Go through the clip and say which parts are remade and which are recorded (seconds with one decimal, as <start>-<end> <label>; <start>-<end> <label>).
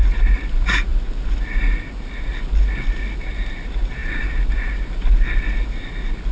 0.0-6.3 recorded